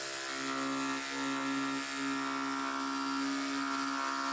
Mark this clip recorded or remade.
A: recorded